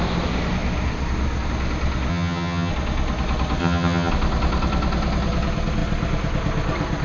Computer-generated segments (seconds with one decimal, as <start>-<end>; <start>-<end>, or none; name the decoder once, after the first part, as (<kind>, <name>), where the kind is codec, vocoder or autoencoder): 2.1-2.7 (vocoder, HiFi-GAN); 3.6-4.1

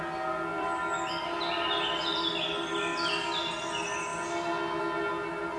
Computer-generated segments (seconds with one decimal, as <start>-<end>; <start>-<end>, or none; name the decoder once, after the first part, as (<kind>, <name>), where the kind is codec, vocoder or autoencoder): 0.5-2.3 (vocoder, BigVGAN v2); 4.1-4.8

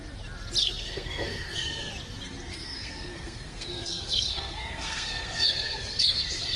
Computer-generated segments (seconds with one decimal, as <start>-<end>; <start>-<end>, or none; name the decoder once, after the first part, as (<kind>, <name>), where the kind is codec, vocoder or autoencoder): 0.6-1.9 (codec, SNAC); 2.5-6.6